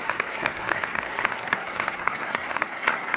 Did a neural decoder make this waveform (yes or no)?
yes